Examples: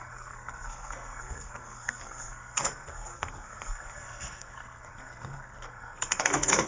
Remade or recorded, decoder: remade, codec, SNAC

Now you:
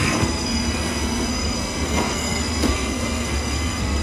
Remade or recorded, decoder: remade, codec, SNAC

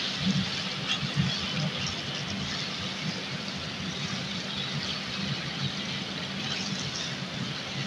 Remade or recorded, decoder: recorded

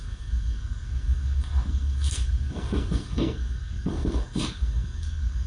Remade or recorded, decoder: remade, codec, SNAC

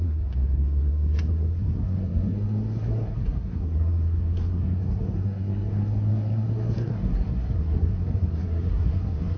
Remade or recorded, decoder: remade, codec, SNAC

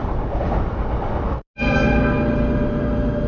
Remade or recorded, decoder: recorded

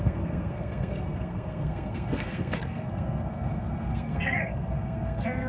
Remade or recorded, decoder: remade, codec, SNAC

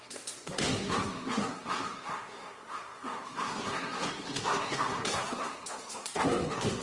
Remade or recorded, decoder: remade, codec, SNAC